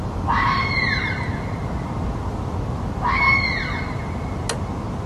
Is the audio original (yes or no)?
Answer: yes